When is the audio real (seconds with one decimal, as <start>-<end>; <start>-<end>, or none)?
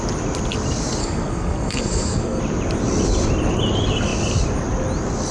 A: 0.0-1.0; 2.4-5.3